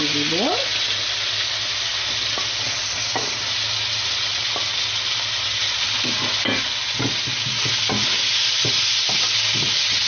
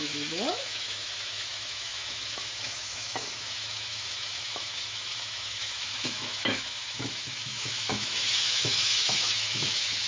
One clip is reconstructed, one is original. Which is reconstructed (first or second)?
second